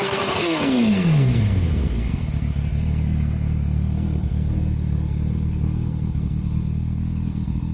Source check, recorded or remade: remade